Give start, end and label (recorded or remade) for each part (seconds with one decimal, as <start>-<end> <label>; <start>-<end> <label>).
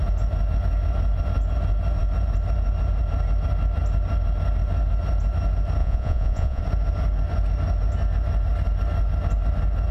0.0-5.8 recorded; 5.8-6.6 remade; 6.6-9.9 recorded